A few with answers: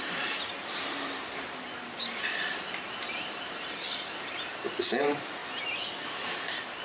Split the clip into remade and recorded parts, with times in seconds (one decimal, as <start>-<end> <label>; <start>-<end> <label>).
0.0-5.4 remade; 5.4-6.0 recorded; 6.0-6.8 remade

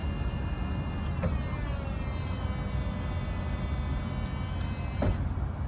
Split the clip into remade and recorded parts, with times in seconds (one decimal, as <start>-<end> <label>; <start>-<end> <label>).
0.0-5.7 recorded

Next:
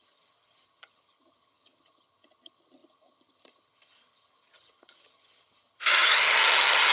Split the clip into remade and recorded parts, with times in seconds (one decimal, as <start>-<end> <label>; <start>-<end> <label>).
0.0-6.9 remade

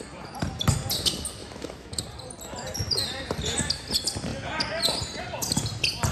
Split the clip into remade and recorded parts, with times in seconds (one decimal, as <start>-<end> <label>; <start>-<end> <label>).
0.0-1.4 recorded; 1.4-2.0 remade; 2.0-6.1 recorded

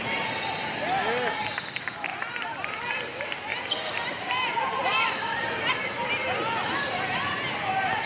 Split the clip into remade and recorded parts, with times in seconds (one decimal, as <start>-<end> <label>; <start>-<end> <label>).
0.0-2.1 recorded; 2.1-2.8 remade; 2.8-3.5 recorded; 3.5-6.1 remade; 6.1-8.1 recorded

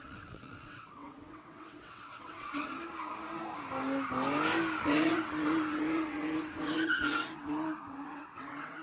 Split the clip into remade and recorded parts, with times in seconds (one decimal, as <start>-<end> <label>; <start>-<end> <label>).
0.0-2.7 remade; 2.7-4.8 recorded; 4.8-8.8 remade

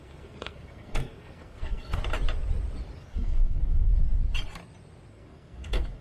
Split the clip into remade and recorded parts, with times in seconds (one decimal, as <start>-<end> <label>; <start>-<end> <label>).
0.0-2.0 remade; 2.0-3.0 recorded; 3.0-3.9 remade; 3.9-5.1 recorded; 5.1-6.0 remade

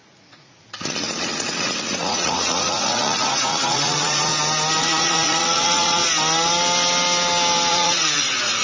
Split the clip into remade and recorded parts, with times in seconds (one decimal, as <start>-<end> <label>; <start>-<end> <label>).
0.0-4.3 remade; 4.3-4.8 recorded; 4.8-6.0 remade; 6.0-7.7 recorded; 7.7-8.6 remade